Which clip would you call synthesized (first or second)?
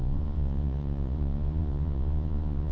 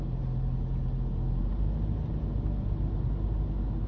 first